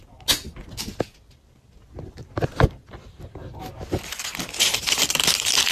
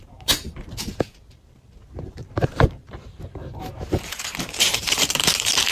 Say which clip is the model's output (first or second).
second